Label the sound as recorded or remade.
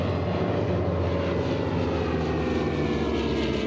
recorded